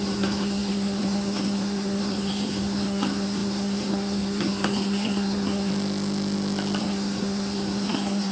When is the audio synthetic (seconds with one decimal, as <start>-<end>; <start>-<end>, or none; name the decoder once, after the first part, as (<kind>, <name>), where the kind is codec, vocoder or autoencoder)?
0.0-5.7 (codec, SNAC); 6.8-8.3